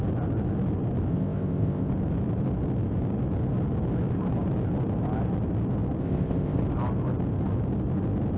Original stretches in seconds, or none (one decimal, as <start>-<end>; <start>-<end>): 0.0-1.1; 1.9-6.0; 6.6-8.4